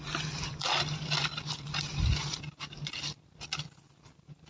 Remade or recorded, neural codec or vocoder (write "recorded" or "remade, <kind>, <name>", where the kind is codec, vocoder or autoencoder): recorded